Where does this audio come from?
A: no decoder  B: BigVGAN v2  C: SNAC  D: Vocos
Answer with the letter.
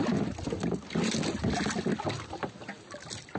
A